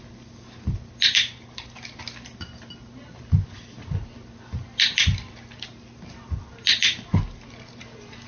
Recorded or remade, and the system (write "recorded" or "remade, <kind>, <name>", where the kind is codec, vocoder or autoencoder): recorded